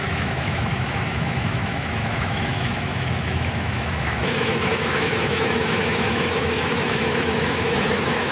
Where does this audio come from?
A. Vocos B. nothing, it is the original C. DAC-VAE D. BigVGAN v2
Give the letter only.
C